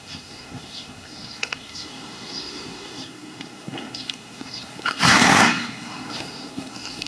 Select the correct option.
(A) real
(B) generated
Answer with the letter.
B